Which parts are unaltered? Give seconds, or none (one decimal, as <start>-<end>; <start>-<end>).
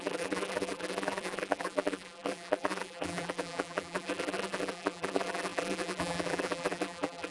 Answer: none